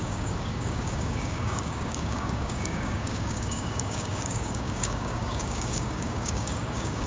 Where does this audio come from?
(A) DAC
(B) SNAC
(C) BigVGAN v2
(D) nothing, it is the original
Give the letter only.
A